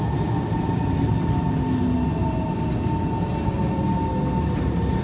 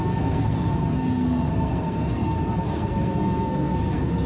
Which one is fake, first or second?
second